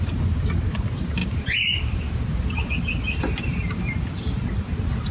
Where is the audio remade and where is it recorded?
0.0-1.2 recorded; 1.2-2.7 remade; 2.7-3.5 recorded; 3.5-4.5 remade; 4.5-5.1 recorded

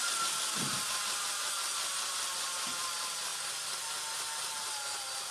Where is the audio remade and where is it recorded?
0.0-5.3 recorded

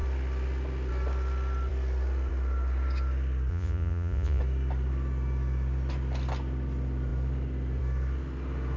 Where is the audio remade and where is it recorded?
0.0-3.5 recorded; 3.5-4.4 remade; 4.4-8.8 recorded